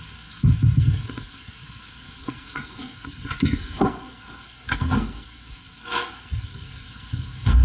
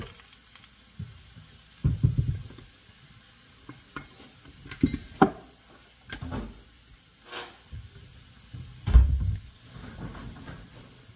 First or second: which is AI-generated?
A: first